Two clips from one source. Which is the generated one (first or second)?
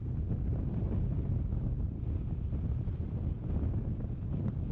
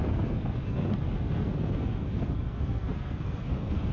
second